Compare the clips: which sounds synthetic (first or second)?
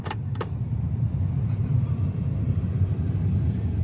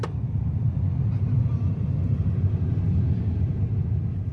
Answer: first